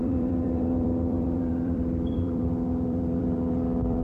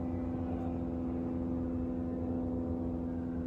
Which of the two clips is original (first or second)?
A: second